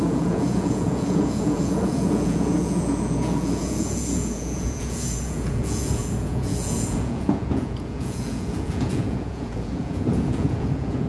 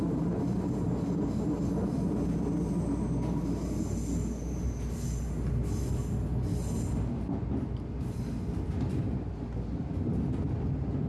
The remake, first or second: first